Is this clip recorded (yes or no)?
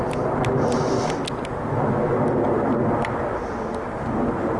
yes